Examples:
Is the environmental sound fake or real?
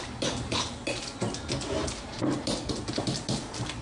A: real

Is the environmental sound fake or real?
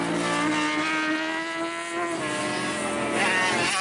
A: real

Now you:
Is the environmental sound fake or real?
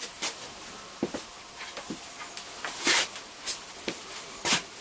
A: real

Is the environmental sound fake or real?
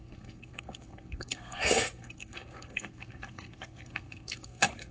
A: fake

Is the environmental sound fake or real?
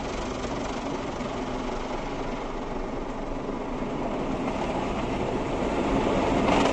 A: real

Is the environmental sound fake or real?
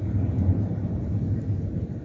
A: real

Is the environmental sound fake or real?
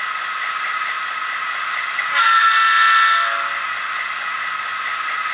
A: real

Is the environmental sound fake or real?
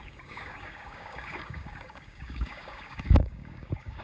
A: fake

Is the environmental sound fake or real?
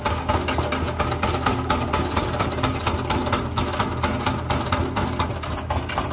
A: real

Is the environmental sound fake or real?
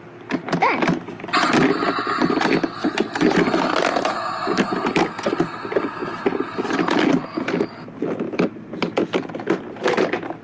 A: real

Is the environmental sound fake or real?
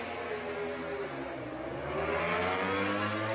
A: real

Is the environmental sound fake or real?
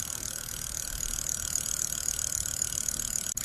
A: real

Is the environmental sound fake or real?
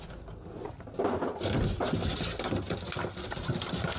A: real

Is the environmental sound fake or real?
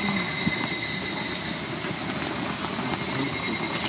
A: real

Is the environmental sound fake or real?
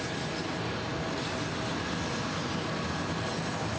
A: real